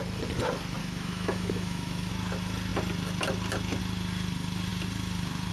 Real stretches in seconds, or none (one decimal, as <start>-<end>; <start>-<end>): 0.0-0.8; 2.1-5.5